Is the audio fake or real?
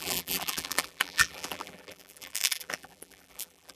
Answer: fake